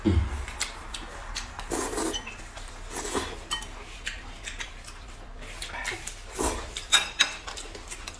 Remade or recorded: remade